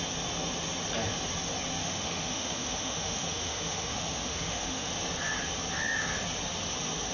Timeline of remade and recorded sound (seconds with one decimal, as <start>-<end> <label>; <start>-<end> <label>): 0.0-1.8 recorded; 1.8-4.9 remade; 4.9-7.1 recorded